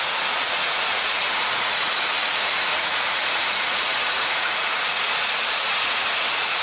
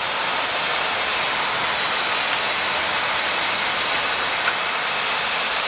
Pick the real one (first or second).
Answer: second